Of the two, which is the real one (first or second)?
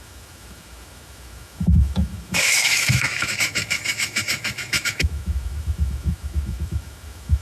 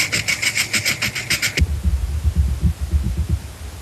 second